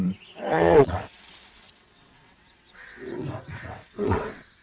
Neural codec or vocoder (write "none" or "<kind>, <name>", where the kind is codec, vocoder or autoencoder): vocoder, WaveNeXt